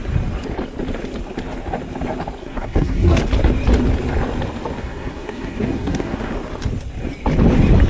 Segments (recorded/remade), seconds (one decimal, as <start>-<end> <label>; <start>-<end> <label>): 0.0-2.4 recorded; 2.4-3.2 remade; 3.2-4.8 recorded; 4.8-6.3 remade; 6.3-7.9 recorded